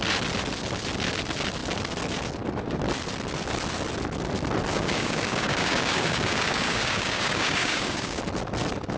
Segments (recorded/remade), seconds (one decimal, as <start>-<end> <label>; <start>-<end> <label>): 0.0-4.7 recorded; 4.7-8.2 remade; 8.2-9.0 recorded

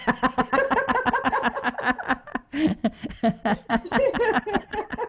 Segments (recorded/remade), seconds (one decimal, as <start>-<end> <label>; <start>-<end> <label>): 0.0-5.1 recorded

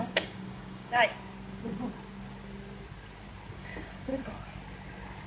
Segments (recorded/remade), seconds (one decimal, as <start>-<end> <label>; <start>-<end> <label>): 0.0-1.1 remade; 1.1-3.5 recorded; 3.5-4.1 remade; 4.1-5.3 recorded